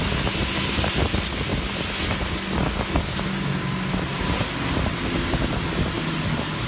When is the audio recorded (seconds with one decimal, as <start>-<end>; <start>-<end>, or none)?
0.0-6.7